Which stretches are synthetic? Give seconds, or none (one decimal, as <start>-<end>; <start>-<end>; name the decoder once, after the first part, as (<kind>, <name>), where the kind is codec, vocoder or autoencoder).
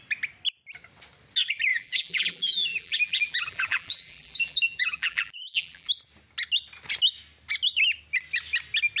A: 1.7-5.9 (vocoder, BigVGAN v2)